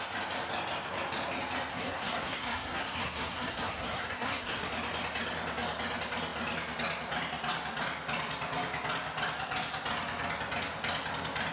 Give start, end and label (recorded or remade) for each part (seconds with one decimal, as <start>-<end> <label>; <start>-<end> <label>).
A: 0.0-1.7 recorded; 1.7-4.7 remade; 4.7-11.5 recorded